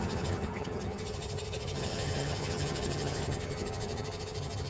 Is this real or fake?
fake